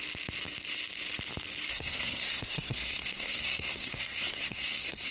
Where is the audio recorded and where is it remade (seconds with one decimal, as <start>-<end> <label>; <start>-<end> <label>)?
0.0-1.7 recorded; 1.7-5.1 remade